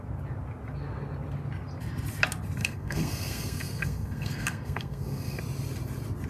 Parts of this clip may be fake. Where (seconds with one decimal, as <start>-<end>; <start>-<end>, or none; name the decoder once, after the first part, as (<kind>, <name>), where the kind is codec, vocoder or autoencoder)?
2.6-5.4 (codec, SNAC)